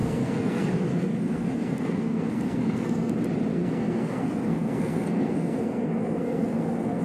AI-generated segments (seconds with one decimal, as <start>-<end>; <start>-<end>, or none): 0.0-3.1; 3.5-7.0